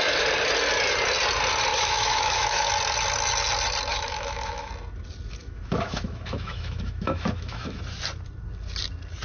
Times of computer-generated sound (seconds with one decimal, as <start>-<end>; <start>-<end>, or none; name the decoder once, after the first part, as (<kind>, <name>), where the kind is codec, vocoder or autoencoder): 1.7-2.7 (autoencoder, DAC-VAE); 3.9-4.7; 5.4-7.8